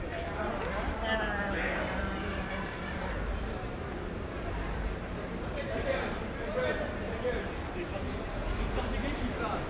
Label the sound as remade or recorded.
remade